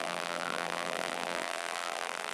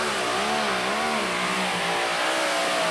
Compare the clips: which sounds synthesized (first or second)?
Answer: first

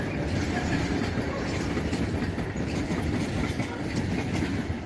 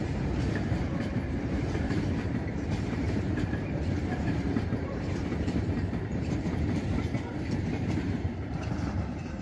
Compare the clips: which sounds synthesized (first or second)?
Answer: second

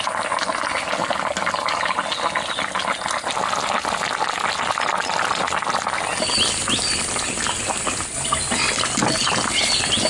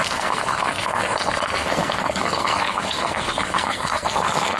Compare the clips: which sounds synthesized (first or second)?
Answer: second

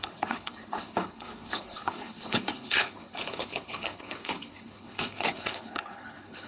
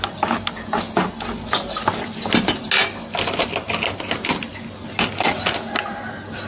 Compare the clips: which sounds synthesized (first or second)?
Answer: first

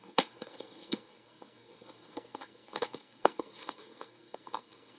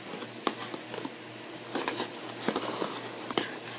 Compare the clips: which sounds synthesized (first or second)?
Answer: first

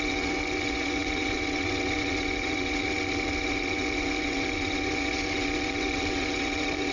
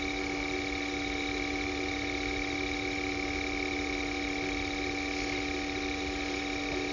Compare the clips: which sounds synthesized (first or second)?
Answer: first